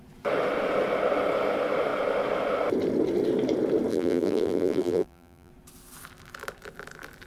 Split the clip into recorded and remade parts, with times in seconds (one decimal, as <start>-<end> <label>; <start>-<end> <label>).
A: 0.0-3.9 recorded; 3.9-5.5 remade; 5.5-7.3 recorded